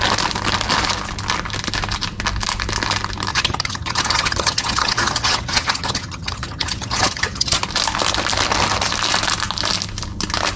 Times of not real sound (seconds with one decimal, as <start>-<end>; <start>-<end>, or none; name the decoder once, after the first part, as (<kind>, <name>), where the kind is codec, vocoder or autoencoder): 3.3-7.6 (vocoder, HiFi-GAN)